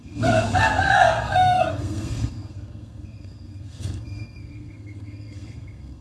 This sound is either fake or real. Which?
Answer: fake